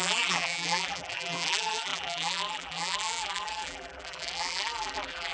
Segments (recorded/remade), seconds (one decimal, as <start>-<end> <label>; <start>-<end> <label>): 0.0-5.3 remade